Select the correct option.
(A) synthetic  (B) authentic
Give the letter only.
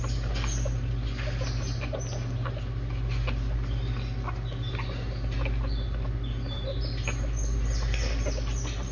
B